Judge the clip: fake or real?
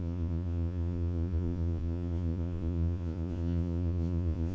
fake